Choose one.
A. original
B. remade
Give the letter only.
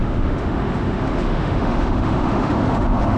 B